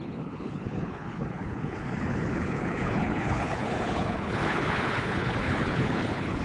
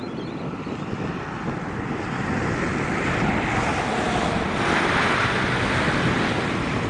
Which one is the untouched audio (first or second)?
second